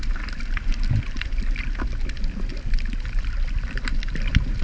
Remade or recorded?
recorded